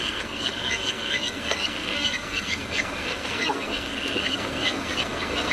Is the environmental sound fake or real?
fake